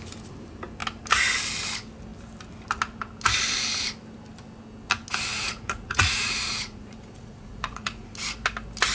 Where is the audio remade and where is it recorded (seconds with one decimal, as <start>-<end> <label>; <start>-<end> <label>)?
0.0-5.3 recorded; 5.3-8.1 remade; 8.1-8.9 recorded